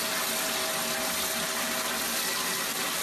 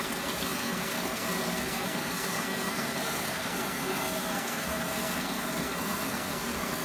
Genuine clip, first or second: first